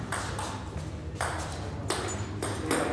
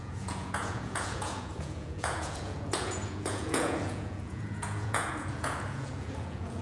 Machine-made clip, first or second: second